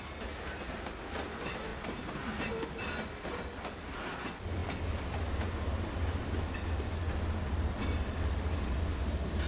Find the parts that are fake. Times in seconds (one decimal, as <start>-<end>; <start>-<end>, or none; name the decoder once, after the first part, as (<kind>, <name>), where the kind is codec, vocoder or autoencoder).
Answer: none